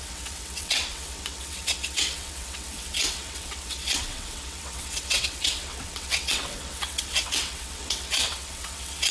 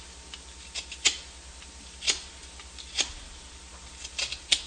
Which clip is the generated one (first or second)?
first